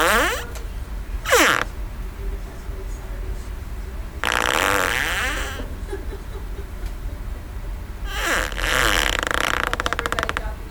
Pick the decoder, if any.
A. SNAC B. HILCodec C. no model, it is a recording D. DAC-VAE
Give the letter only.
C